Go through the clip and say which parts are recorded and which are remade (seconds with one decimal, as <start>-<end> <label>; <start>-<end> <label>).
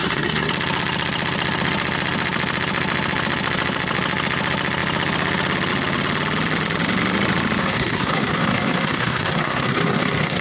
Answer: 0.0-0.5 remade; 0.5-7.6 recorded; 7.6-10.4 remade